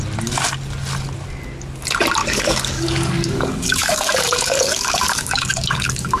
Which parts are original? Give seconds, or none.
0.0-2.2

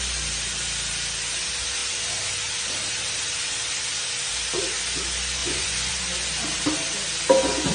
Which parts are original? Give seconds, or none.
0.0-5.4; 5.9-7.7